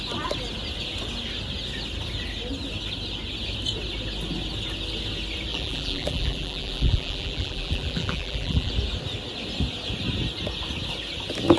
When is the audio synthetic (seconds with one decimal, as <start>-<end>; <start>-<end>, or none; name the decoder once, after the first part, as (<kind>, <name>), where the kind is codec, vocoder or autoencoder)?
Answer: 5.5-8.7 (vocoder, BigVGAN v2)